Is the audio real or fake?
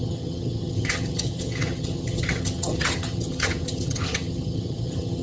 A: fake